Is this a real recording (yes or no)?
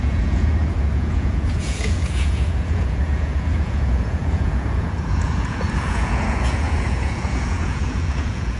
no